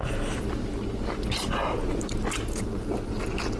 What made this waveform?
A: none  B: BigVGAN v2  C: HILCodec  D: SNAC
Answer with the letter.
A